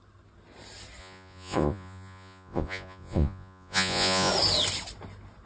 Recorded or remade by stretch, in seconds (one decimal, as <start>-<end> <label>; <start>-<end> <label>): 0.0-1.0 recorded; 1.0-4.3 remade; 4.3-5.5 recorded